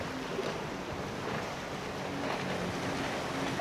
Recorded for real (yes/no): yes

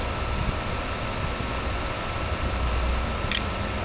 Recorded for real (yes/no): yes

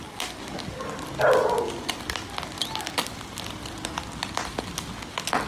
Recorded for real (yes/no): yes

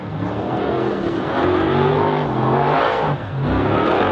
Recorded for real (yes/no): no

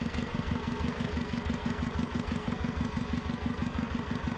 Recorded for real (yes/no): no